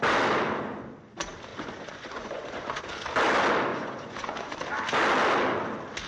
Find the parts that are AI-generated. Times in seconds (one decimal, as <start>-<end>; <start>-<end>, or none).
1.5-2.9; 3.7-4.6

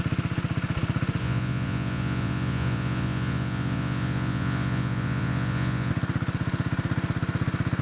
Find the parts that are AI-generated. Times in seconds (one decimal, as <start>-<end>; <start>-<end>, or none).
1.2-5.9

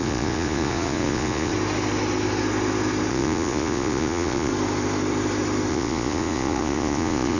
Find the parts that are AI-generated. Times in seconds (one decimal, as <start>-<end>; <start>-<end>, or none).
0.0-1.5; 3.1-4.5; 5.7-7.4